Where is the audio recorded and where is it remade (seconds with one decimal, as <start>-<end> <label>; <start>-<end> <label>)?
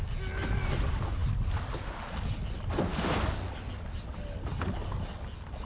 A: 0.0-5.7 recorded